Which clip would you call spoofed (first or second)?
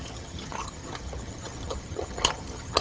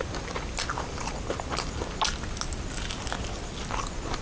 first